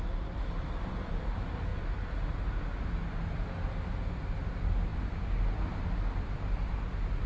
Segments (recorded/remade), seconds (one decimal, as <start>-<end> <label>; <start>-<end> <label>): 0.0-7.3 recorded